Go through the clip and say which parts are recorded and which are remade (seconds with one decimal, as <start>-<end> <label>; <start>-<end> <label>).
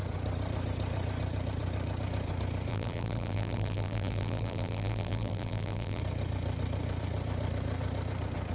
0.0-2.7 recorded; 2.7-6.0 remade; 6.0-8.5 recorded